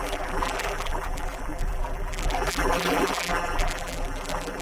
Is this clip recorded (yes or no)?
no